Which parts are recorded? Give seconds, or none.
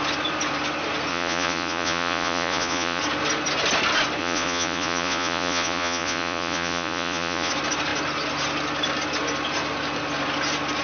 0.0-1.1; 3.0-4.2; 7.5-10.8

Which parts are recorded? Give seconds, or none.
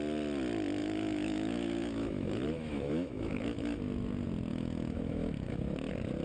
0.0-0.8; 3.8-4.5; 5.6-6.2